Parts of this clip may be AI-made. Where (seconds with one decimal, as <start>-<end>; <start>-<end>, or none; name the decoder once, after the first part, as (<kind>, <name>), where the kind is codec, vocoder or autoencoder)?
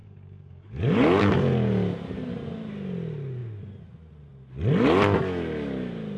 0.0-1.3 (codec, DAC)